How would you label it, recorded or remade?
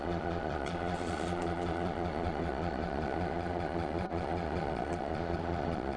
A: remade